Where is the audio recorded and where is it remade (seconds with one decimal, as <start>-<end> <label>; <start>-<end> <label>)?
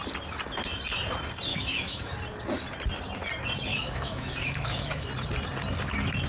0.0-1.5 recorded; 1.5-2.1 remade; 2.1-3.7 recorded; 3.7-5.1 remade; 5.1-6.3 recorded